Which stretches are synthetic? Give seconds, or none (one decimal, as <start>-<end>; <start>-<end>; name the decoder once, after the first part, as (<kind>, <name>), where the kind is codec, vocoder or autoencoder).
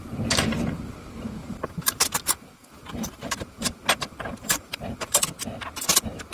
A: 1.4-5.2 (vocoder, BigVGAN v2)